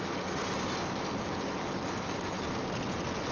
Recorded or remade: recorded